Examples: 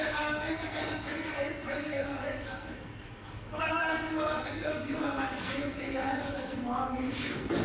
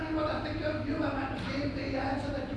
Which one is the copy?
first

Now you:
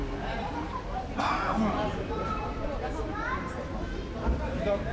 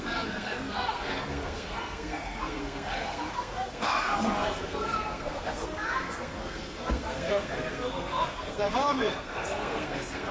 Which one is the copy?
second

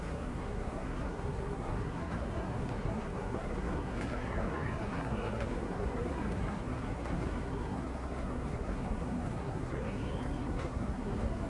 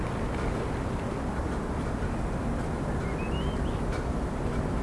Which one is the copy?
first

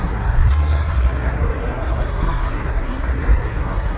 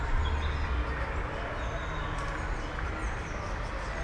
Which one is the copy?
first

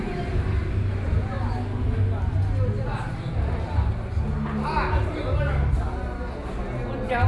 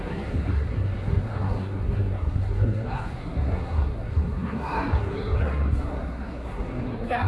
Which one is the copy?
second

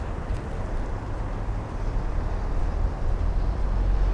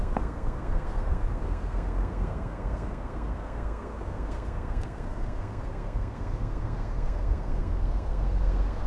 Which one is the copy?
second